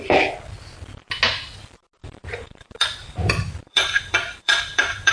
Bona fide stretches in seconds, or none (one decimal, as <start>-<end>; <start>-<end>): 0.0-2.0